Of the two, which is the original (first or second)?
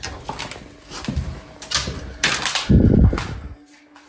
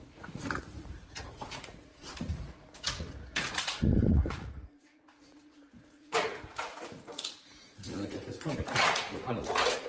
first